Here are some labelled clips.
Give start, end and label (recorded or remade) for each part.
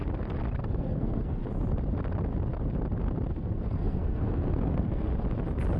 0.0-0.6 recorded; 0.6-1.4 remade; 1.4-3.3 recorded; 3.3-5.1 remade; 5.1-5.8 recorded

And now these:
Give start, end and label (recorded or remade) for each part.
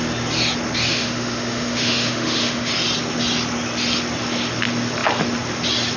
0.0-0.9 recorded; 0.9-2.7 remade; 2.7-6.0 recorded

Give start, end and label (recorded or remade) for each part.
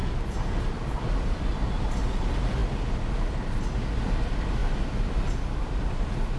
0.0-6.4 recorded